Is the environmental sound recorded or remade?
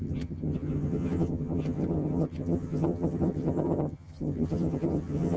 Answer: remade